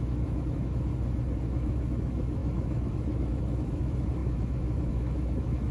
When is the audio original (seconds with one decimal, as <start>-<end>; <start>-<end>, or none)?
0.9-1.4